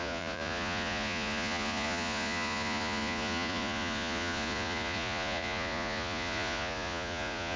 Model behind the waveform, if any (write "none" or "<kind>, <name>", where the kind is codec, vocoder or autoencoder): vocoder, Vocos